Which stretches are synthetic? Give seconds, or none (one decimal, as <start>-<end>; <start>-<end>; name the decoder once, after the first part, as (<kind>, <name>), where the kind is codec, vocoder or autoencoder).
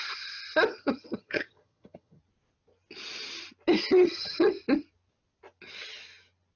0.7-2.2 (vocoder, HiFi-GAN); 3.9-4.5